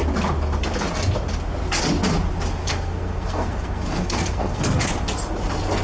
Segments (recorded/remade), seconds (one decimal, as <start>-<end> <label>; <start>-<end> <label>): 0.0-2.6 recorded; 2.6-4.9 remade; 4.9-5.8 recorded